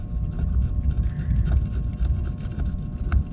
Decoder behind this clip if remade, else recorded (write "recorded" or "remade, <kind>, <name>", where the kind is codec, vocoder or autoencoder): recorded